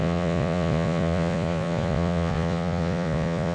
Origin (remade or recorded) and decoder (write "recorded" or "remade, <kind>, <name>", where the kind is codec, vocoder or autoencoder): remade, vocoder, Vocos